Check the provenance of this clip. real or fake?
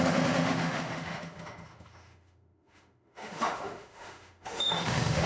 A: fake